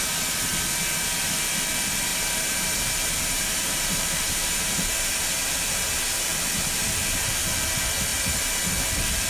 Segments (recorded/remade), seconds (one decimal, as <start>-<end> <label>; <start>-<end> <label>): 0.0-2.1 recorded; 2.1-5.1 remade; 5.1-8.1 recorded; 8.1-8.6 remade; 8.6-9.3 recorded